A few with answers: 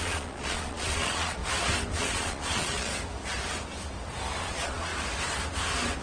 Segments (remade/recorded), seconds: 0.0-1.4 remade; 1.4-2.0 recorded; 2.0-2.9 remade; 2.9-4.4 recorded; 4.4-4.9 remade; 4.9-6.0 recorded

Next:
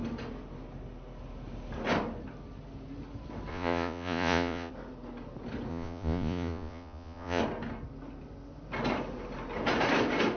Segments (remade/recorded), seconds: 0.0-3.5 recorded; 3.5-4.7 remade; 4.7-5.7 recorded; 5.7-7.4 remade; 7.4-10.4 recorded

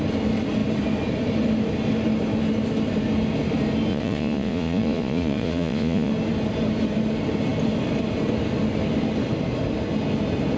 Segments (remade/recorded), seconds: 0.0-3.9 recorded; 3.9-6.1 remade; 6.1-10.6 recorded

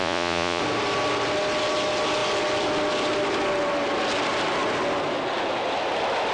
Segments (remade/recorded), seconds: 0.0-0.6 remade; 0.6-6.3 recorded

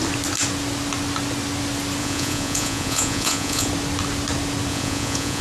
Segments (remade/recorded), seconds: 0.0-2.0 recorded; 2.0-3.7 remade; 3.7-4.7 recorded; 4.7-5.4 remade

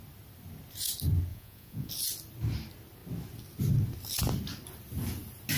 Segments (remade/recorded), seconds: 0.0-1.3 recorded; 1.3-1.9 remade; 1.9-5.6 recorded

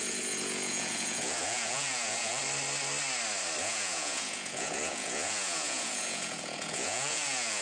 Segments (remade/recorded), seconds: 0.0-2.4 remade; 2.4-3.6 recorded; 3.6-7.6 remade

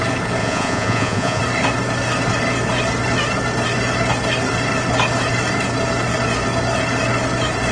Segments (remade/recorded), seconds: 0.0-0.4 recorded; 0.4-1.4 remade; 1.4-7.7 recorded